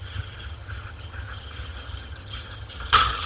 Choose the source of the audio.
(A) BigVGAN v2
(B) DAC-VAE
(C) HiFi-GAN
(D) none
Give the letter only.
C